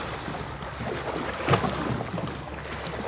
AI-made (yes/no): no